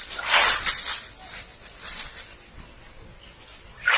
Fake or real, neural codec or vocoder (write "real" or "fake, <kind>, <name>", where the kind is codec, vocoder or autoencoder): real